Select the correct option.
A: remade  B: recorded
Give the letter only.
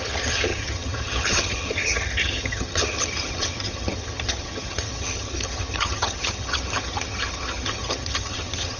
A